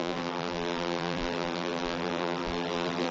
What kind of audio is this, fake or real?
fake